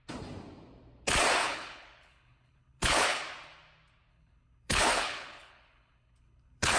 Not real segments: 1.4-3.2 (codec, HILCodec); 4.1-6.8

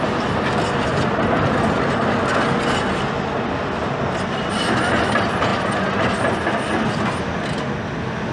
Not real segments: none

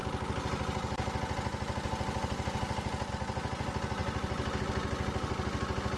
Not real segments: none

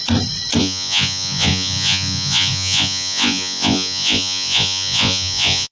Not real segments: 0.6-5.7 (vocoder, Vocos)